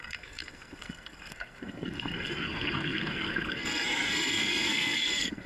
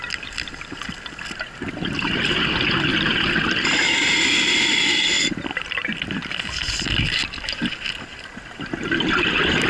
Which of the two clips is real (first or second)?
second